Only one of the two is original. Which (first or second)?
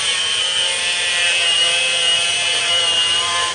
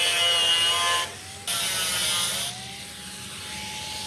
second